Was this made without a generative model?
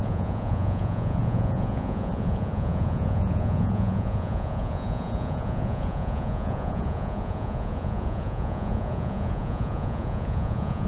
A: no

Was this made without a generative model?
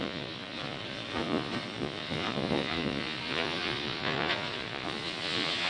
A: no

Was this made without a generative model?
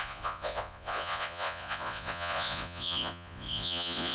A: no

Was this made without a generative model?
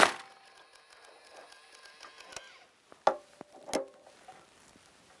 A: yes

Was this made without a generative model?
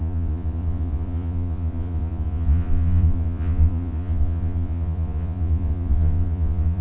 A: no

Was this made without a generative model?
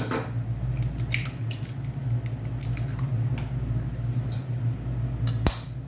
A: yes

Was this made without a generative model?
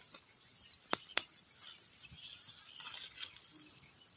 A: yes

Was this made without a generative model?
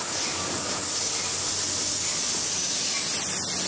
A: yes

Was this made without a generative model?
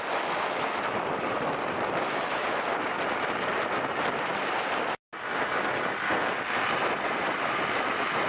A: yes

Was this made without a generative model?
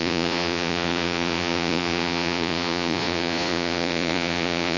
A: no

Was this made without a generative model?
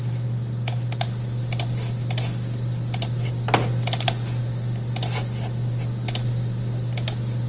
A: yes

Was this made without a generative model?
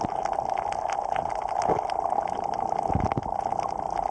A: yes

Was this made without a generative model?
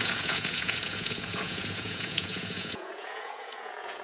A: no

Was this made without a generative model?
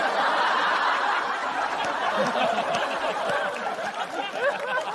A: yes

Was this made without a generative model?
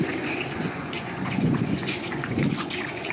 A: no